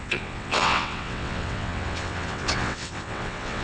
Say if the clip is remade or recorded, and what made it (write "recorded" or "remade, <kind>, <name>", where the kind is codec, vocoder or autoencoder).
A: remade, vocoder, WaveNeXt